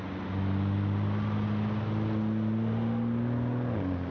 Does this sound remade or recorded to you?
recorded